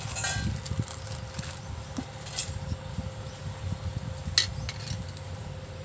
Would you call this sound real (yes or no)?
yes